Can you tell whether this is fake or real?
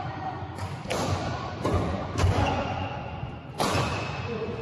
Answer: fake